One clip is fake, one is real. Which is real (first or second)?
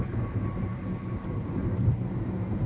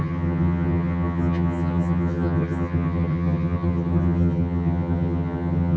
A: first